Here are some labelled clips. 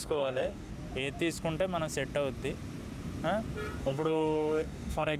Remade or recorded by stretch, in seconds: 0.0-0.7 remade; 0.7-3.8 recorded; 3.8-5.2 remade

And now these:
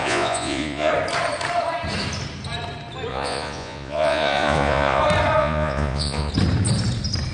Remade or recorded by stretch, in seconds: 0.0-0.9 remade; 0.9-3.1 recorded; 3.1-5.0 remade; 5.0-5.4 recorded; 5.4-6.3 remade; 6.3-7.3 recorded

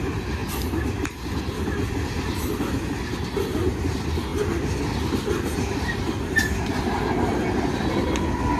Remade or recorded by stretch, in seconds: 0.0-8.6 recorded

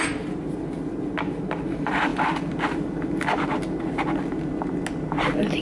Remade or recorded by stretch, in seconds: 0.0-5.6 recorded

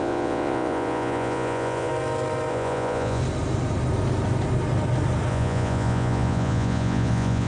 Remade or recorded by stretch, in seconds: 0.0-1.9 remade; 1.9-2.5 recorded; 2.5-3.2 remade; 3.2-5.3 recorded; 5.3-7.5 remade